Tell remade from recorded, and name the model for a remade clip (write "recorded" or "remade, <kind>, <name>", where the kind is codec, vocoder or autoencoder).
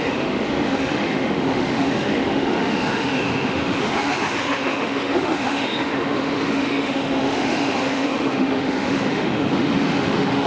remade, autoencoder, DAC-VAE